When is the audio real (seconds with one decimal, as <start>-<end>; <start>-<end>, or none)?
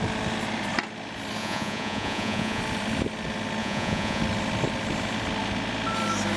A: 0.0-1.4; 2.6-3.6; 4.2-6.4